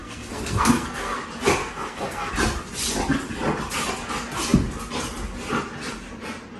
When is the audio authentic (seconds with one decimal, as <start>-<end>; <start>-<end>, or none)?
1.2-1.6; 2.3-6.6